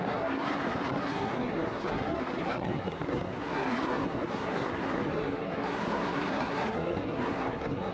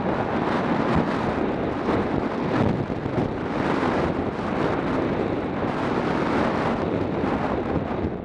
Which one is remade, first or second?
first